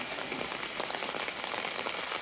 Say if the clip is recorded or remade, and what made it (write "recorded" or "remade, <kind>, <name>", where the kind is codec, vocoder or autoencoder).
recorded